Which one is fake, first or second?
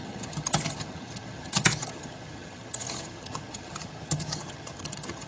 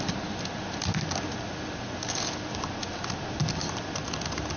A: first